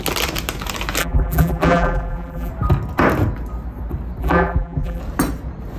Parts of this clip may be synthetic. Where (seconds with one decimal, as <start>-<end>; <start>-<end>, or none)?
1.0-2.5; 4.2-5.0